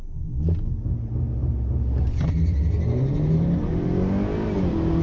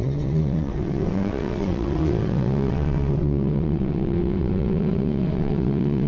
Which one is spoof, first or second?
second